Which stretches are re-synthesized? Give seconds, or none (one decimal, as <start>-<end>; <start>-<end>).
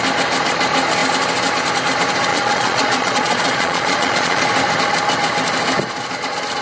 2.3-4.4